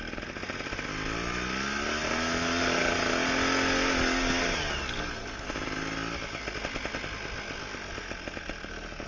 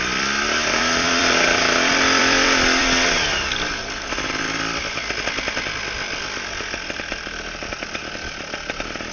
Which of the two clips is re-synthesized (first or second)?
second